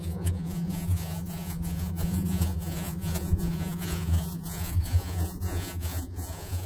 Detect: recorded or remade remade